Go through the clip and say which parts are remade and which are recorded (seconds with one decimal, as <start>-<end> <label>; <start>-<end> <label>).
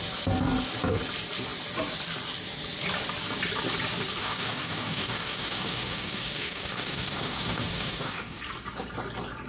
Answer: 0.0-4.2 recorded; 4.2-8.4 remade; 8.4-9.5 recorded